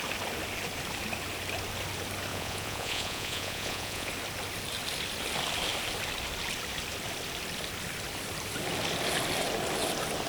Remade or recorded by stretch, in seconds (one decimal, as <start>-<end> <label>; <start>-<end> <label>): 0.0-2.3 recorded; 2.3-4.1 remade; 4.1-10.3 recorded